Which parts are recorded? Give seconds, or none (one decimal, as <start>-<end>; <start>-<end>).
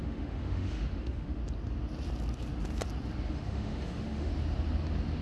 1.4-3.3; 4.3-5.2